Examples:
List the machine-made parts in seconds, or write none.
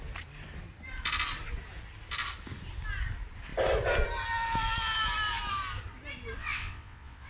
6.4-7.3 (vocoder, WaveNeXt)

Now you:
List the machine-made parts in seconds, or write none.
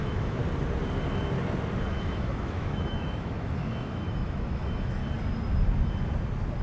0.0-0.4 (autoencoder, DAC-VAE); 1.8-5.0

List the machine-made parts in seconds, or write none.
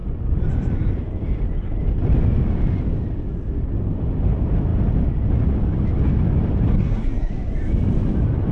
6.7-7.3 (codec, SNAC)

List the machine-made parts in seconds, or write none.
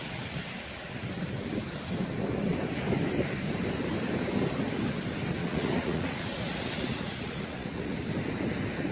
0.0-1.1 (vocoder, Vocos); 5.4-8.0